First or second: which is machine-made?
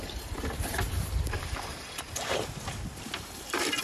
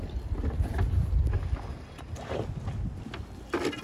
first